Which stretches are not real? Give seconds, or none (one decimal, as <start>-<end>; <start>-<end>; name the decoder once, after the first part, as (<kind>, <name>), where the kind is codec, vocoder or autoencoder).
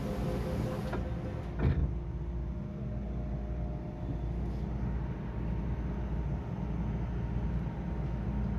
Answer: none